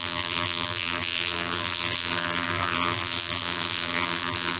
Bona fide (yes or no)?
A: no